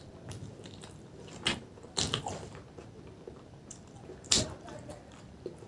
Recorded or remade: remade